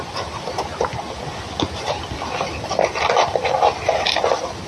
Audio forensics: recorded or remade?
recorded